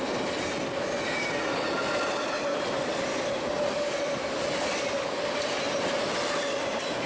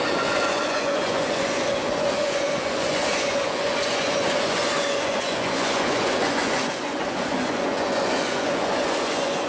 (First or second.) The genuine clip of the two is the first